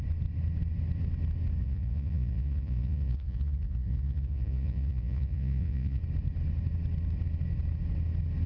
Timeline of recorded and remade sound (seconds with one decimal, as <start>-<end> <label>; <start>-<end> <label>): 0.0-1.6 recorded; 1.6-6.0 remade; 6.0-8.5 recorded